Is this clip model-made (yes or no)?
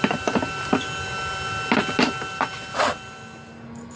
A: no